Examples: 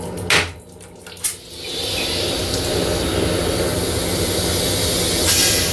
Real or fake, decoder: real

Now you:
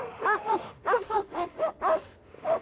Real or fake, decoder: fake, autoencoder, DAC-VAE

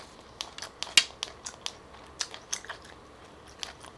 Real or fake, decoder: real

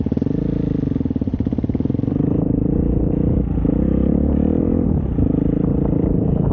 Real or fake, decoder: real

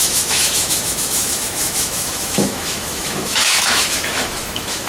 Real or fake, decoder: fake, autoencoder, DAC-VAE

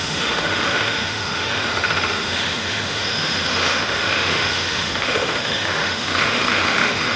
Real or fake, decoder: fake, autoencoder, DAC-VAE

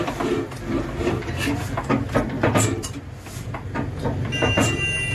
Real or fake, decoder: real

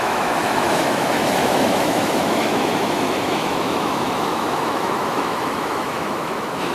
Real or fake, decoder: fake, autoencoder, DAC-VAE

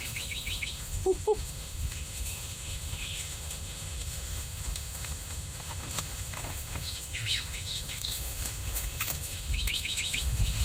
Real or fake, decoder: fake, autoencoder, DAC-VAE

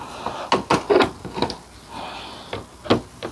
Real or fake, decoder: real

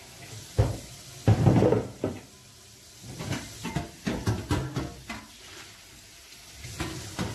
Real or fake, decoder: real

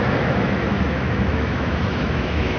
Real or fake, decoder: fake, autoencoder, DAC-VAE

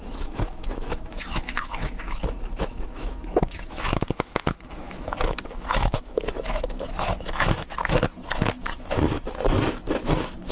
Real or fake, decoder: fake, autoencoder, DAC-VAE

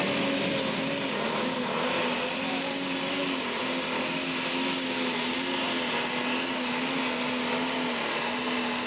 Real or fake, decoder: real